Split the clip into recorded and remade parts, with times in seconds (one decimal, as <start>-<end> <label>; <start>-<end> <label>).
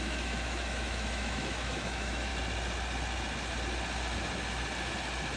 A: 0.0-2.3 remade; 2.3-5.4 recorded